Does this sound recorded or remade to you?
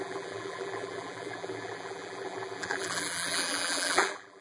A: remade